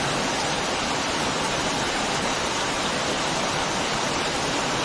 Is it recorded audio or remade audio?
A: remade